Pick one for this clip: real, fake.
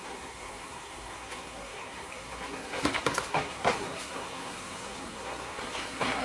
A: fake